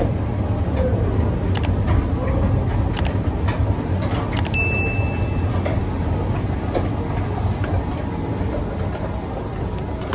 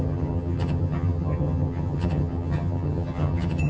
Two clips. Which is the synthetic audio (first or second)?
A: second